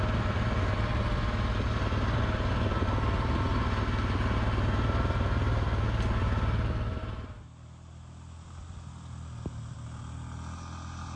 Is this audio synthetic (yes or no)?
no